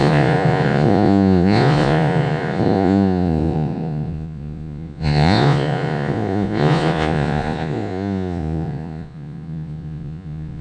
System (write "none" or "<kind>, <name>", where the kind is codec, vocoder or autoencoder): vocoder, Vocos